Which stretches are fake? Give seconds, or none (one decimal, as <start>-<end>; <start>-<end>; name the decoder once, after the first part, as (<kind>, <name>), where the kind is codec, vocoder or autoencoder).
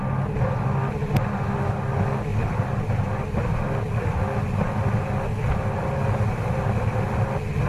none